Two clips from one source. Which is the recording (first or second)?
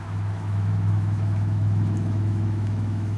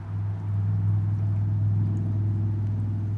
second